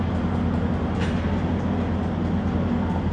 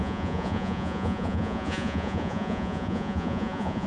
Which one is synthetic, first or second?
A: second